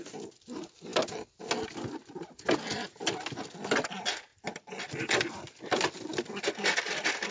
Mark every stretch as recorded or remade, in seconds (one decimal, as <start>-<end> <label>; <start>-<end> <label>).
0.0-7.3 recorded

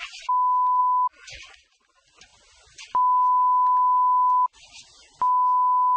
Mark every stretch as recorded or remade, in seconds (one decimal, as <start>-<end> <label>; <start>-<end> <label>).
0.0-6.0 recorded

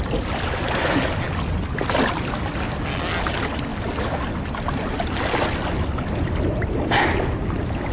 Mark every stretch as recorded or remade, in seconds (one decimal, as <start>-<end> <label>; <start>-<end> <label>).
0.0-7.9 recorded

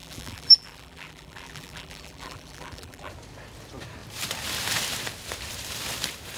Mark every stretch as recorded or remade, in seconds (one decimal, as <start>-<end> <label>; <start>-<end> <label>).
0.0-3.1 remade; 3.1-6.4 recorded

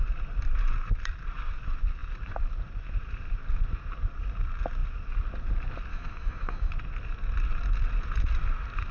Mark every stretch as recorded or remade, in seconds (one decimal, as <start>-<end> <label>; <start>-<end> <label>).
0.0-5.9 recorded; 5.9-6.7 remade; 6.7-8.9 recorded